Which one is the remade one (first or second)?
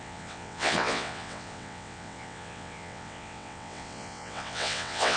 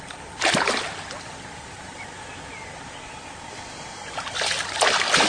first